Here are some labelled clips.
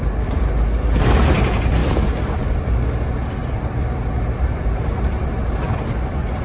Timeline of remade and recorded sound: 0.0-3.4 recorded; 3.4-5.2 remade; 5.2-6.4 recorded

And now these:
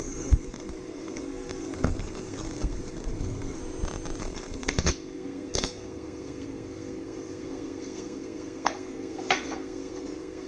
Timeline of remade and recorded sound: 0.0-3.6 remade; 3.6-4.2 recorded; 4.2-10.5 remade

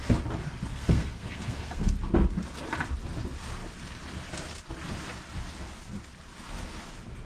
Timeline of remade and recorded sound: 0.0-0.7 recorded; 0.7-1.9 remade; 1.9-7.3 recorded

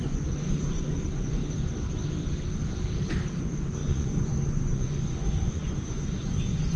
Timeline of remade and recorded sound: 0.0-1.4 remade; 1.4-3.4 recorded; 3.4-6.8 remade

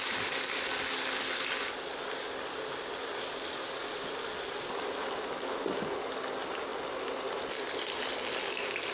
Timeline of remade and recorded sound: 0.0-8.9 recorded

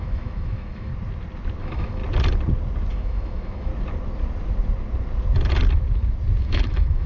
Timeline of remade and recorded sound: 0.0-0.9 remade; 0.9-1.6 recorded; 1.6-2.0 remade; 2.0-2.9 recorded; 2.9-3.7 remade; 3.7-6.4 recorded; 6.4-7.1 remade